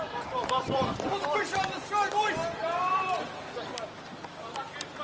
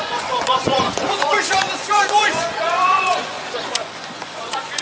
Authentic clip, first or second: first